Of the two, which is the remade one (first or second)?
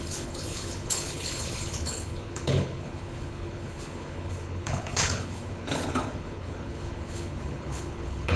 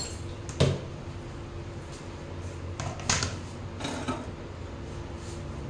first